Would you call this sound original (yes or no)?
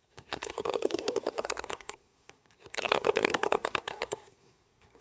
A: no